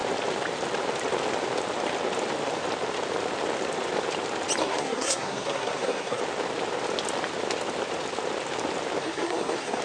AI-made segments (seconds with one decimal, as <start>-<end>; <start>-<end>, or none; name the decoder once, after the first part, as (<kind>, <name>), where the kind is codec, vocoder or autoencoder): 4.6-6.2 (codec, SNAC); 9.0-9.8